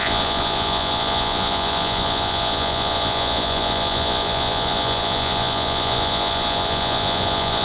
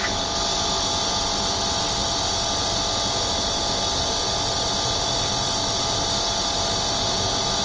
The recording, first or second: second